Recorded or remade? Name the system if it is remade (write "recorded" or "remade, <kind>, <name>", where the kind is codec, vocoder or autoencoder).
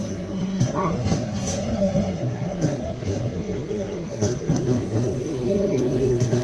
remade, codec, SNAC